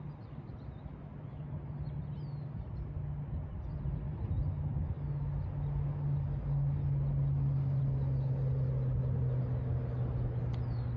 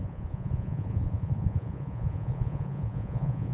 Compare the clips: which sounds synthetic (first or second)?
second